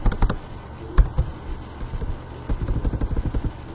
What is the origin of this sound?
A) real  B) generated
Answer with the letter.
A